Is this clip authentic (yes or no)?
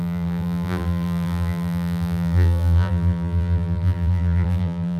no